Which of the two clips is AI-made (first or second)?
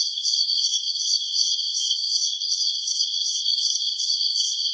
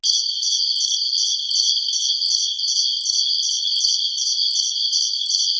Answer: first